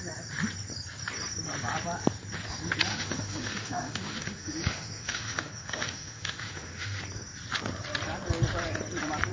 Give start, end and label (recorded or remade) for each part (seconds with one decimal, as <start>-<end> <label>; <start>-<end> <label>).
0.0-2.9 recorded; 2.9-7.0 remade; 7.0-9.3 recorded